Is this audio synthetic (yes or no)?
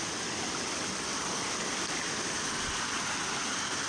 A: no